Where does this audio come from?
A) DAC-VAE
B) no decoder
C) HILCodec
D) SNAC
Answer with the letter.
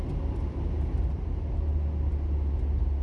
B